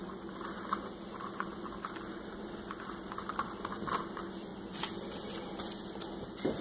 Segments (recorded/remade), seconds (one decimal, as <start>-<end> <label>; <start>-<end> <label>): 0.0-6.6 recorded